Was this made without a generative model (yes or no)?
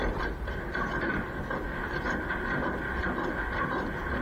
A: yes